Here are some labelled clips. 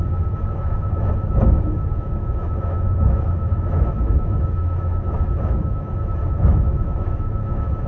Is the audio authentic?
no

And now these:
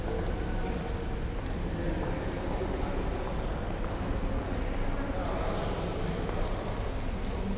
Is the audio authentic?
yes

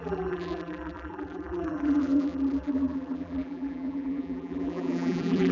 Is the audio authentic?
no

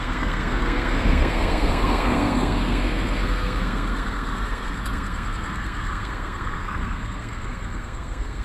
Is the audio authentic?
no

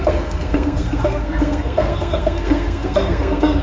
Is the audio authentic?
no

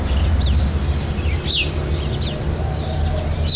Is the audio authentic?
yes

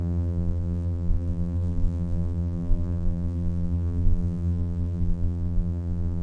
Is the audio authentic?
no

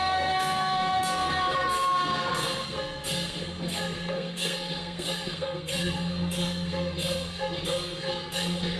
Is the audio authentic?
no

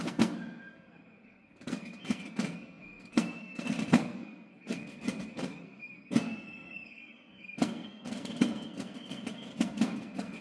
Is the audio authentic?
no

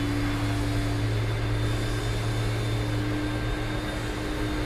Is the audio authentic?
yes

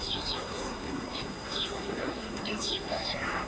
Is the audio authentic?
no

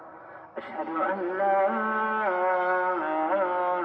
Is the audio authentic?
yes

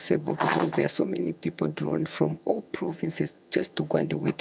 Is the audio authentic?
no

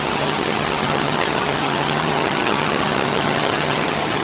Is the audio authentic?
no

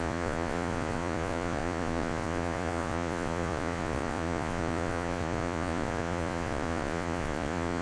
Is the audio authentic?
no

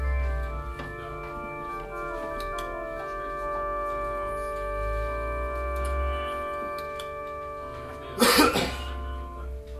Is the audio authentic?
yes